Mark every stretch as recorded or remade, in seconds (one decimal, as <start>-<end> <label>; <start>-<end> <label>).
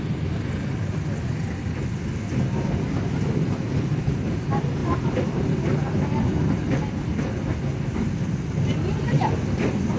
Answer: 0.0-10.0 recorded